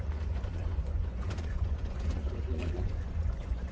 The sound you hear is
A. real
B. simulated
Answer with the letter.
B